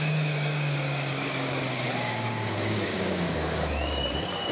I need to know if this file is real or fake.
fake